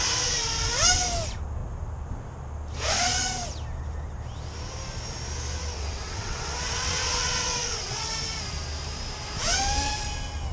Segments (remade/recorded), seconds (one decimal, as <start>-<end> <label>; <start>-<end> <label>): 0.0-5.6 recorded; 5.6-8.0 remade; 8.0-10.5 recorded